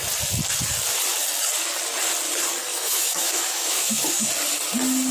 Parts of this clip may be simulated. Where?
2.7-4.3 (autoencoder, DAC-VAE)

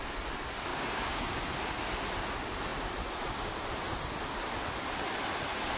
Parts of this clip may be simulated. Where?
0.7-1.4 (codec, DAC)

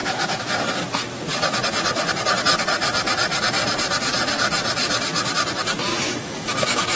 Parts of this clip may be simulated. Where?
5.9-7.0 (autoencoder, DAC-VAE)

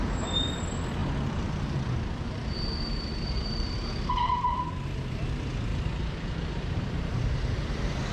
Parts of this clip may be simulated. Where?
1.0-4.7 (vocoder, BigVGAN v2); 5.7-8.1

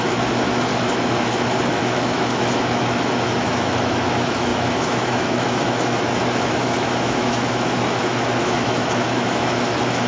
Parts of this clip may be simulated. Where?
0.0-0.7 (autoencoder, DAC-VAE); 1.7-10.1

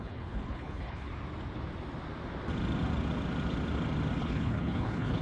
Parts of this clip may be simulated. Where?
0.0-1.1 (codec, HILCodec); 4.2-5.2